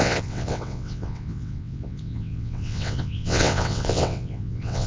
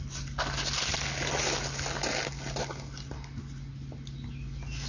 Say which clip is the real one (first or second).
second